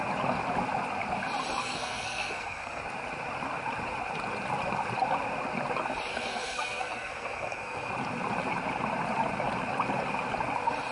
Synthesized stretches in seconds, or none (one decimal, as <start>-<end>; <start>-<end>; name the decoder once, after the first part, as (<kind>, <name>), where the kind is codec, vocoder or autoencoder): 1.6-2.8 (codec, SNAC); 6.1-7.9